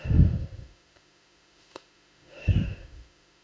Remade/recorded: remade